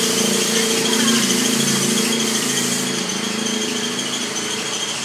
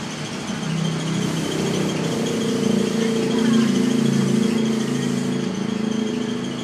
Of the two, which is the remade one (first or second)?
first